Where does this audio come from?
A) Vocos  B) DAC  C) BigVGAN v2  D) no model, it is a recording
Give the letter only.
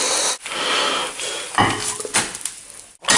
D